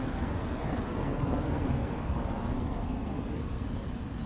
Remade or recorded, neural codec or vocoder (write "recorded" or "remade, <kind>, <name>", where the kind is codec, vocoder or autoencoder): remade, codec, SNAC